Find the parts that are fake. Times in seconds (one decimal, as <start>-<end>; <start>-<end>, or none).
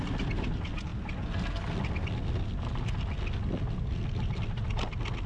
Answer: none